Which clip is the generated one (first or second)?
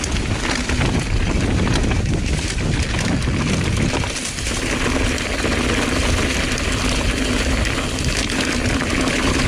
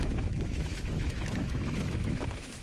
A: second